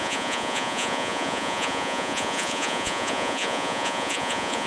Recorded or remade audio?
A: remade